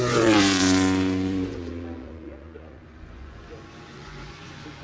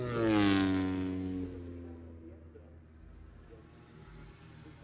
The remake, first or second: first